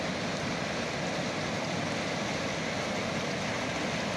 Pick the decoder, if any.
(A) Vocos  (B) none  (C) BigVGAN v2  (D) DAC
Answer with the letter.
B